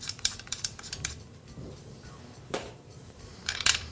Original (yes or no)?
no